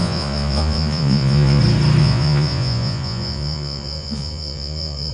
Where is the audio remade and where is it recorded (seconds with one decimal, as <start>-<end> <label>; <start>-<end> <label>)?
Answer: 0.0-1.6 remade; 1.6-2.0 recorded; 2.0-5.1 remade